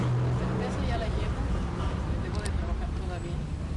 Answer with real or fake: real